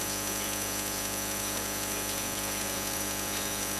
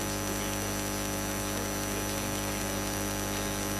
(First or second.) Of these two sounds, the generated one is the first